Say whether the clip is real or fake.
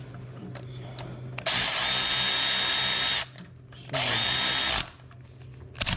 real